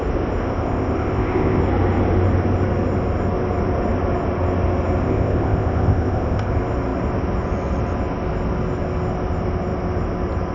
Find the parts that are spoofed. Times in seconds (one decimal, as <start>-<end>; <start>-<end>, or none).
0.4-1.6; 5.0-6.5